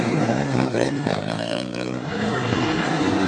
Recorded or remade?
remade